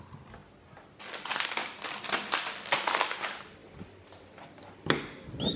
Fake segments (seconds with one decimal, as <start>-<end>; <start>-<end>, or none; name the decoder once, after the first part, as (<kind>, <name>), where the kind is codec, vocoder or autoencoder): none